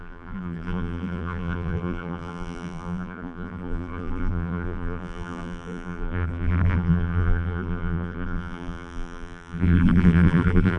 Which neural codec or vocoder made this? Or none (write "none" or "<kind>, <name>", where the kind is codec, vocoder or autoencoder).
vocoder, BigVGAN v2